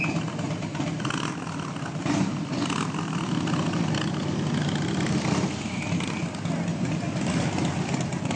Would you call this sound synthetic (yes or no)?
no